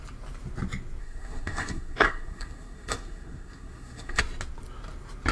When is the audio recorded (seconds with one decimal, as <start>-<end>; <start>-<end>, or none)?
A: 0.0-1.0; 4.2-5.3